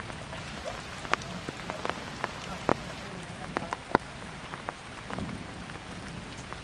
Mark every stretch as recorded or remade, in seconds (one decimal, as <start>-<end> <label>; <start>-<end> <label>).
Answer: 0.0-2.7 recorded; 2.7-5.6 remade; 5.6-6.6 recorded